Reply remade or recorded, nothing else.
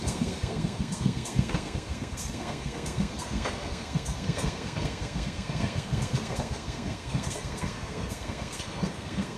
remade